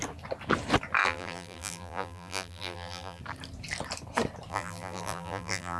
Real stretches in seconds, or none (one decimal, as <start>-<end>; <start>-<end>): 0.0-1.0; 3.2-4.5